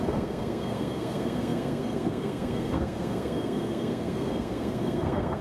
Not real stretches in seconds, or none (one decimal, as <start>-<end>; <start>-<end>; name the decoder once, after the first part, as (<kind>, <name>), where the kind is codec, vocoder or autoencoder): 0.0-5.4 (codec, SNAC)